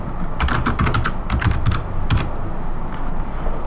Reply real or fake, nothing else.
real